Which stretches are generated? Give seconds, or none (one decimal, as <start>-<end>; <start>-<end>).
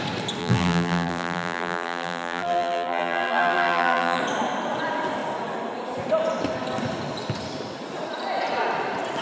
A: 0.4-4.2